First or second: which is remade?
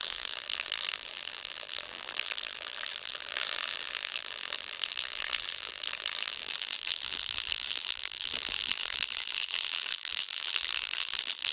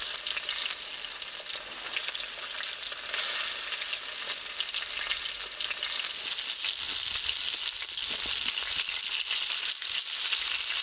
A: first